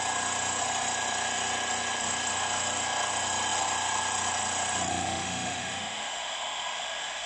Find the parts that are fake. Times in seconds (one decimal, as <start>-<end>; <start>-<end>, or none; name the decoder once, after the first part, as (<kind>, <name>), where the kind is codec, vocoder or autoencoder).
4.9-7.3 (autoencoder, DAC-VAE)

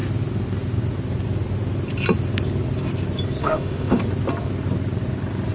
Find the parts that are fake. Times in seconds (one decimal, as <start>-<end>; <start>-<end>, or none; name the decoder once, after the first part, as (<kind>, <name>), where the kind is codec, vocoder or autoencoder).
3.4-4.0 (autoencoder, DAC-VAE)

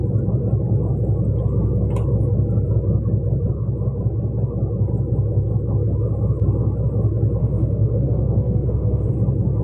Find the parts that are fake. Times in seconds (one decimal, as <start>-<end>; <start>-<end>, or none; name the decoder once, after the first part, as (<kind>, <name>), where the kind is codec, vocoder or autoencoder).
7.4-9.1 (autoencoder, DAC-VAE)

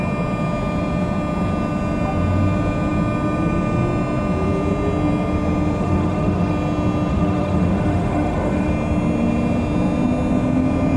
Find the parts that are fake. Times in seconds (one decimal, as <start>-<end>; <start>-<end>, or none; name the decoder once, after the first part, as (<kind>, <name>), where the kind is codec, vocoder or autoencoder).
5.8-6.5 (autoencoder, DAC-VAE); 7.1-8.7

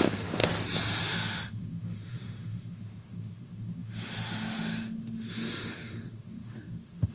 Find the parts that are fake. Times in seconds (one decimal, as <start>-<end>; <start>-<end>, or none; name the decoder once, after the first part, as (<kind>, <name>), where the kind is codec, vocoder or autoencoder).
0.0-0.4 (autoencoder, DAC-VAE); 1.0-7.1

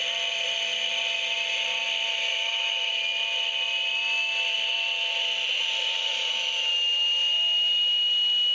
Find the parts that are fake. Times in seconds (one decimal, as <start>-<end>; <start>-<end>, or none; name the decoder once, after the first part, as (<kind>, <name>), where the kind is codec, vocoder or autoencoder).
2.3-2.9 (autoencoder, DAC-VAE); 6.0-6.7